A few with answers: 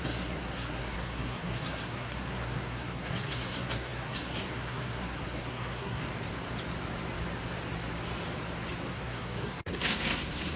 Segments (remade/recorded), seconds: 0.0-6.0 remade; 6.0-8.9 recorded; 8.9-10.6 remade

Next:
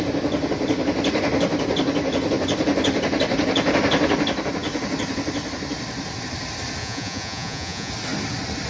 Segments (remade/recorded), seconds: 0.0-6.8 recorded; 6.8-7.9 remade; 7.9-8.7 recorded